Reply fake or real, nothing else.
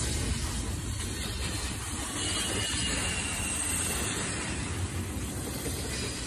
real